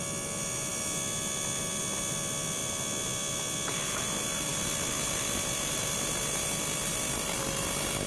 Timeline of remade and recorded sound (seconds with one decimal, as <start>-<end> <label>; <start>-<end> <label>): 0.0-8.1 recorded